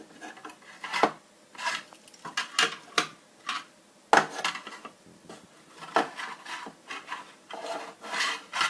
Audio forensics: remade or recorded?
recorded